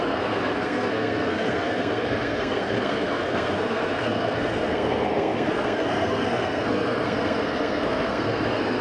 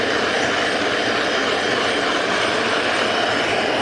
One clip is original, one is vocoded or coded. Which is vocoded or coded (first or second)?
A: first